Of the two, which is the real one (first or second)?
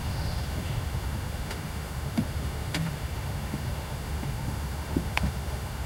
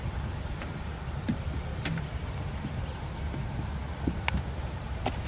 second